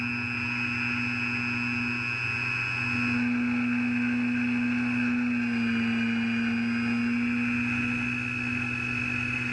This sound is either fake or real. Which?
real